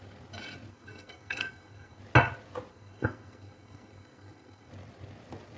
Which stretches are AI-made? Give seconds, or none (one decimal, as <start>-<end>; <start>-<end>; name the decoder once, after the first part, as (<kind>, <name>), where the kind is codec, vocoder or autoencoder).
0.7-2.0 (codec, SNAC); 2.7-4.7